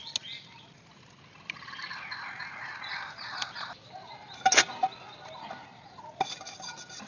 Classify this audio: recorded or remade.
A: recorded